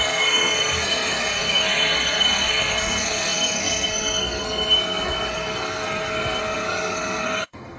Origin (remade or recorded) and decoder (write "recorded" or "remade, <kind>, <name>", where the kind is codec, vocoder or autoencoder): remade, codec, SNAC